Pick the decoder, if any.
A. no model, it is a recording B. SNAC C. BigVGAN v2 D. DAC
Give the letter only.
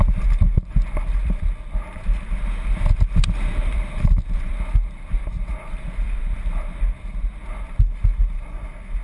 A